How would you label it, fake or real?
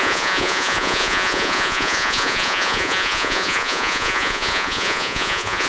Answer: fake